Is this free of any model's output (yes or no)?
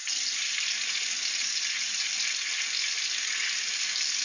yes